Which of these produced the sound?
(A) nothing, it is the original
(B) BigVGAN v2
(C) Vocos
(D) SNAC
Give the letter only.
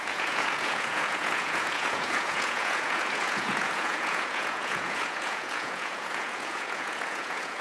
C